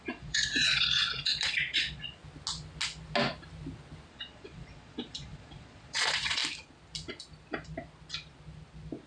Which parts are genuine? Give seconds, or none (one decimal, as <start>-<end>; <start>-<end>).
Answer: 2.2-4.1; 6.4-9.1